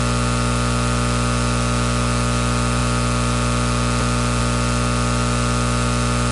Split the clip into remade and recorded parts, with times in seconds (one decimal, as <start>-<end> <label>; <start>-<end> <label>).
0.0-6.3 recorded